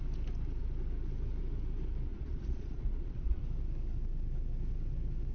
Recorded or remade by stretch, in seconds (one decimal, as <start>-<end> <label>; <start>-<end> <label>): 0.0-2.1 recorded; 2.1-3.4 remade; 3.4-5.3 recorded